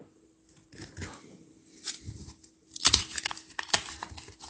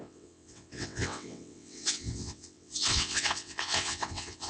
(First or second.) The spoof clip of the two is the second